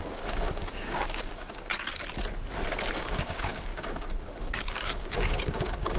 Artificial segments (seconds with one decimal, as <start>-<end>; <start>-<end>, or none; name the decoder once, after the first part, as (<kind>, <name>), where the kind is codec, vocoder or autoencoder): 0.0-1.7 (codec, DAC); 3.0-6.0